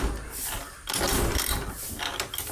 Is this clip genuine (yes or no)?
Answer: yes